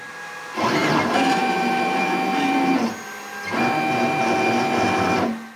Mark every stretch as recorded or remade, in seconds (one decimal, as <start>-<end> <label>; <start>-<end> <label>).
0.0-5.6 recorded